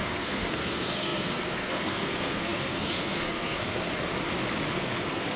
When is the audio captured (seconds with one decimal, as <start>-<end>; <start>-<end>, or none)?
3.9-4.7